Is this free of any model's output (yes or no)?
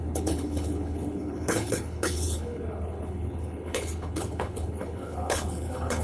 no